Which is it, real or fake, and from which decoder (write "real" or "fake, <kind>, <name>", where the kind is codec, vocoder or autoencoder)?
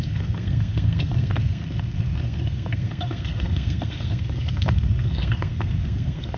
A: fake, codec, SNAC